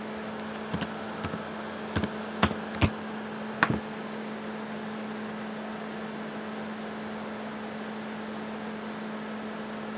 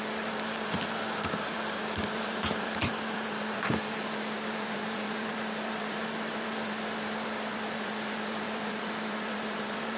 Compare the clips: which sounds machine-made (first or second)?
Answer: second